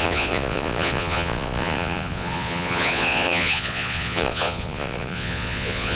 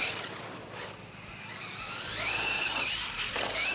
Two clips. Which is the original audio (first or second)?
second